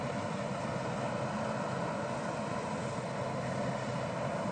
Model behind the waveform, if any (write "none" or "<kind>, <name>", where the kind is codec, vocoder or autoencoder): none